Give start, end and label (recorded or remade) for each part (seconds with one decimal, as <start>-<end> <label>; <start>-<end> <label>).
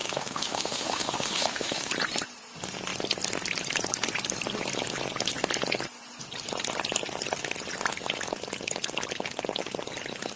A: 0.0-1.9 remade; 1.9-10.4 recorded